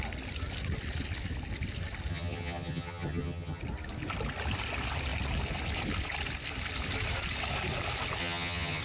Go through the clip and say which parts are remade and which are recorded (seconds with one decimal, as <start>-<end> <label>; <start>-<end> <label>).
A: 0.0-2.1 recorded; 2.1-3.6 remade; 3.6-8.2 recorded; 8.2-8.8 remade